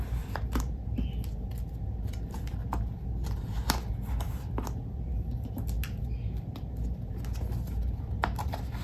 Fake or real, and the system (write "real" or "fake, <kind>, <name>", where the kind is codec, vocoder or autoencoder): real